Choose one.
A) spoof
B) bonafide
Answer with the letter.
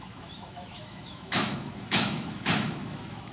A